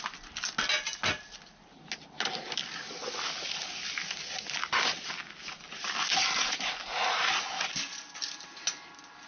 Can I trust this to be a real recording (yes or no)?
yes